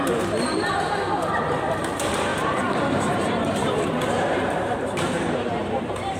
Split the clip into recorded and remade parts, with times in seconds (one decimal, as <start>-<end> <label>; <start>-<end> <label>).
0.0-2.3 recorded; 2.3-6.2 remade